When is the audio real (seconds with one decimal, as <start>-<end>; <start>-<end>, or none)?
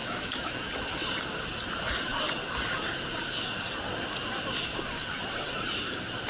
0.7-6.3